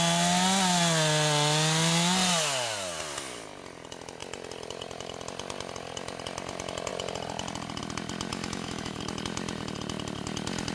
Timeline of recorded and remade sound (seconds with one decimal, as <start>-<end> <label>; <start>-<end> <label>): 0.0-8.3 recorded; 8.3-9.0 remade; 9.0-10.7 recorded